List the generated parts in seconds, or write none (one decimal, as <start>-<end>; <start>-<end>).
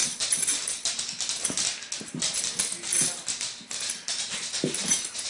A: 2.9-4.1